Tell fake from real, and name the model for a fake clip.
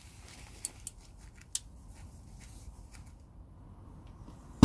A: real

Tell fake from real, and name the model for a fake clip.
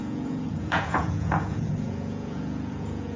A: fake, vocoder, Vocos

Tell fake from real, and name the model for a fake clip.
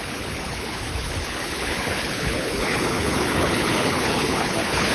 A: fake, codec, HILCodec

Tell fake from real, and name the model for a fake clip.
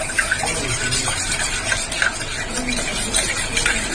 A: real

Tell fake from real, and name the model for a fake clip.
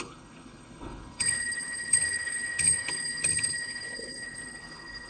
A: fake, codec, HILCodec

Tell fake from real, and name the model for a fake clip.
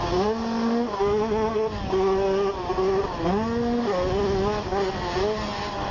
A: real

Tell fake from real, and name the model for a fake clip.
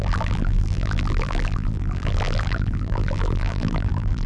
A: fake, vocoder, BigVGAN v2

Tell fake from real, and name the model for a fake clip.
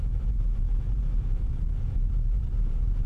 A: fake, vocoder, BigVGAN v2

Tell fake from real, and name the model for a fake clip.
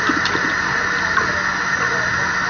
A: real